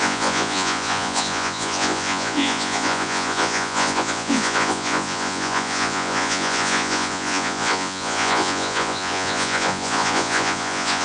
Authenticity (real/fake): fake